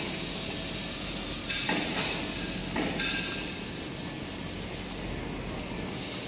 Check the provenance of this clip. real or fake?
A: real